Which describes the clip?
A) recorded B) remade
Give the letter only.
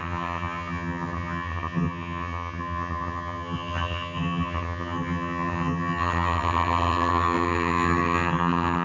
B